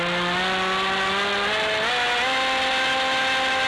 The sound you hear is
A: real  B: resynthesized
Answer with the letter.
A